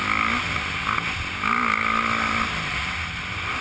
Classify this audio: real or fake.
real